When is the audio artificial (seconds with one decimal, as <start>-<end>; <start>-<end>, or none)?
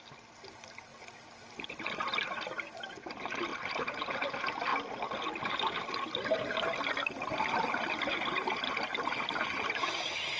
none